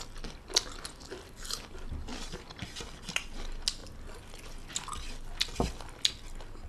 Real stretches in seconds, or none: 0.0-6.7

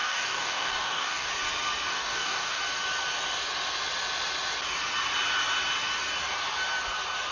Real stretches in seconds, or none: 1.3-1.9; 2.6-7.3

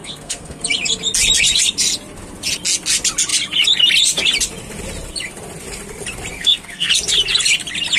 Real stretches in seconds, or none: 0.6-6.3; 6.9-8.0

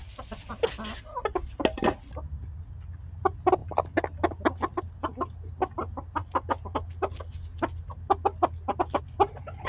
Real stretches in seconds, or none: 0.8-9.7